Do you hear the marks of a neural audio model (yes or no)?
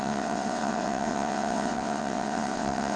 yes